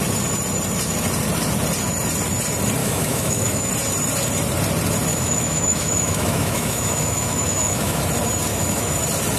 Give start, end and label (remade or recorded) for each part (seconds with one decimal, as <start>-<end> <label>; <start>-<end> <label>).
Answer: 0.0-2.8 recorded; 2.8-3.7 remade; 3.7-5.1 recorded; 5.1-8.0 remade; 8.0-8.5 recorded; 8.5-9.0 remade; 9.0-9.4 recorded